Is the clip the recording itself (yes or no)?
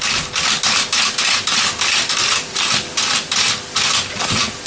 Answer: yes